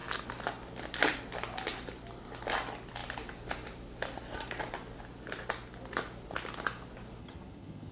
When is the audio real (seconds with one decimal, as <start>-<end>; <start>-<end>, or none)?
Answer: 0.0-7.2